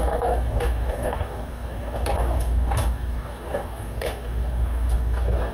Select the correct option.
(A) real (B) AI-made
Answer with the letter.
B